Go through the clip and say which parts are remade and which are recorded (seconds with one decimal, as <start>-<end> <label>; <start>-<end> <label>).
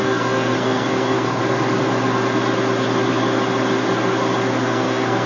0.0-1.4 remade; 1.4-4.6 recorded; 4.6-5.3 remade